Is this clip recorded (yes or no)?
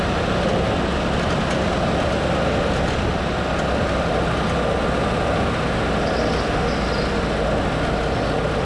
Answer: yes